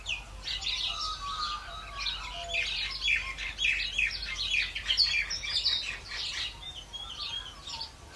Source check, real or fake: real